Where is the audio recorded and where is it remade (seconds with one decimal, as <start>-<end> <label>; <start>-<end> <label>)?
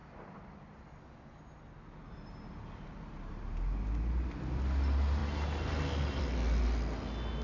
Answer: 0.0-7.4 recorded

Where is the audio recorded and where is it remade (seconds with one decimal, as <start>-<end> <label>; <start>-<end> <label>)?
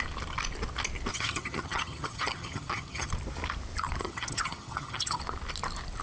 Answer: 0.0-1.1 recorded; 1.1-3.1 remade; 3.1-4.0 recorded; 4.0-5.2 remade; 5.2-6.0 recorded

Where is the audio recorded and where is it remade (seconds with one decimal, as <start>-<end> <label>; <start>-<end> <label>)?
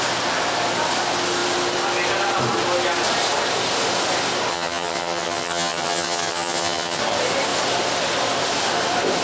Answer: 0.0-4.5 recorded; 4.5-7.0 remade; 7.0-9.2 recorded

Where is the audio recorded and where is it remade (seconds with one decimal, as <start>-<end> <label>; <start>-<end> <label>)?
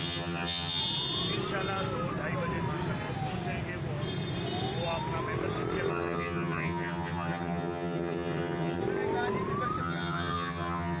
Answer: 0.0-0.8 remade; 0.8-5.9 recorded; 5.9-8.8 remade; 8.8-9.8 recorded; 9.8-11.0 remade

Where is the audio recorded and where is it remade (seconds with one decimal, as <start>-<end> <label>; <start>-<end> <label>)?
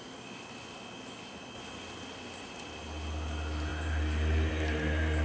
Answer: 0.0-5.2 recorded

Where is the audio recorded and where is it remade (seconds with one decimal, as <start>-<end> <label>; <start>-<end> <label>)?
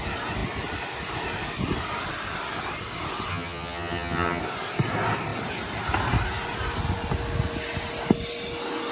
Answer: 0.0-3.3 recorded; 3.3-4.4 remade; 4.4-8.9 recorded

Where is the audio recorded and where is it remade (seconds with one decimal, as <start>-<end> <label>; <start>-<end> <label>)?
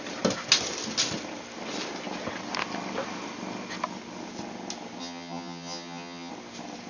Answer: 0.0-5.0 recorded; 5.0-6.3 remade; 6.3-6.9 recorded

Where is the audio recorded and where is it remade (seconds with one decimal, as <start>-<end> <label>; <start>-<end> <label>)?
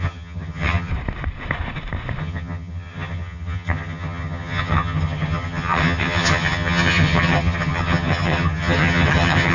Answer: 0.0-0.9 remade; 0.9-2.2 recorded; 2.2-9.5 remade